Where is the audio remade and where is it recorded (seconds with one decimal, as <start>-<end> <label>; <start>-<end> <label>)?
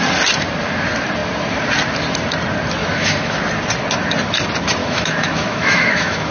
0.0-2.8 recorded; 2.8-3.4 remade; 3.4-4.8 recorded; 4.8-6.3 remade